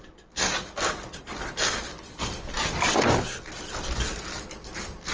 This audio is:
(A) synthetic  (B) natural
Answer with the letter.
B